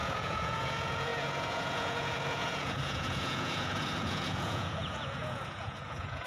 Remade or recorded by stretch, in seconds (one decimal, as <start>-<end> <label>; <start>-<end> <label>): 0.0-6.3 remade